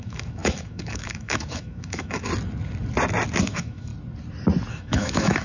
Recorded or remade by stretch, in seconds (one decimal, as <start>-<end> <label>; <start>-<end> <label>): 0.0-2.3 remade; 2.3-3.4 recorded; 3.4-3.9 remade; 3.9-4.7 recorded; 4.7-5.4 remade